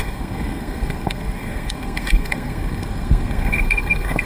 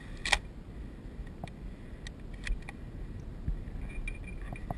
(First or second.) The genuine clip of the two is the second